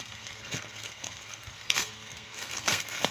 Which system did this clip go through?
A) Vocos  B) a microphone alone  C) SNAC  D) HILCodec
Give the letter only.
C